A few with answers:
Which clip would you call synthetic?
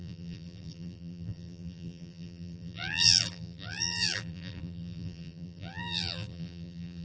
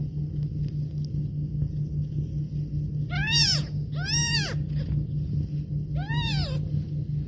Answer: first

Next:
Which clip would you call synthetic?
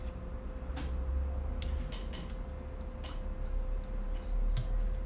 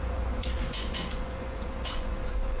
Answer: second